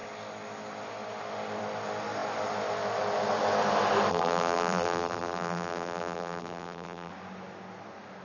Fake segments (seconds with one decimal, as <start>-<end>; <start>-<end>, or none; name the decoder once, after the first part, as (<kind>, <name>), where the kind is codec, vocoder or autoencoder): 4.1-7.1 (vocoder, BigVGAN v2)